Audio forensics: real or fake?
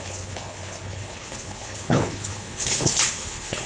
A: fake